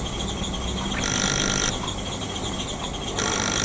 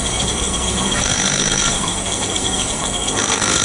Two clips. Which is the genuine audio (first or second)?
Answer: first